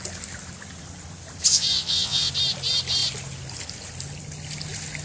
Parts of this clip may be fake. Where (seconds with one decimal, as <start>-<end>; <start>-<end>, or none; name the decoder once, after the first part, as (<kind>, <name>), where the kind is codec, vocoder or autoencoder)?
1.5-2.3 (vocoder, WaveNeXt)